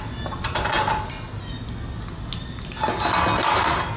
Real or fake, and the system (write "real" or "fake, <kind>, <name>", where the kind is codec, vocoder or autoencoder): real